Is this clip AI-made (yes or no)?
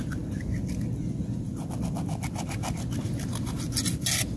no